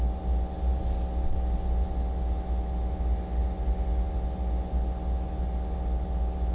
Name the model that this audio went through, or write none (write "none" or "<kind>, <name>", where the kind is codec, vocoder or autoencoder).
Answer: none